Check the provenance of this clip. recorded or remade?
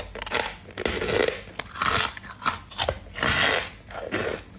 recorded